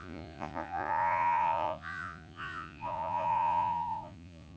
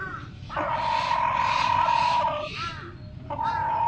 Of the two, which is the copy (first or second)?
first